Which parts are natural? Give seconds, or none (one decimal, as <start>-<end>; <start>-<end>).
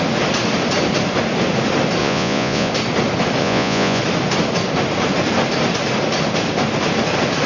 0.0-2.0; 2.7-3.4; 4.0-7.5